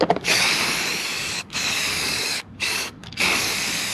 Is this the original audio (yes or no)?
no